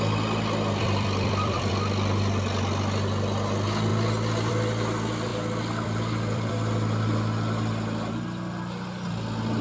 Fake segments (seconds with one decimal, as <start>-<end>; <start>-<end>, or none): 0.8-1.7; 5.3-6.5